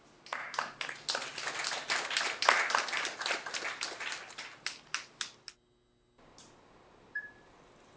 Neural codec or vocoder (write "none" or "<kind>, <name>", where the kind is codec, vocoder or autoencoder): none